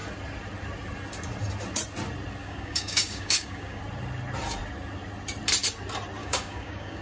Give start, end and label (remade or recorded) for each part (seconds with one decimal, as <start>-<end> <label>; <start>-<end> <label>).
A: 0.0-2.4 recorded; 2.4-3.8 remade; 3.8-6.2 recorded; 6.2-7.0 remade